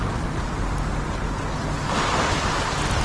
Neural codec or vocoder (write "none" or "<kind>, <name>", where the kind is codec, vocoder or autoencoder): none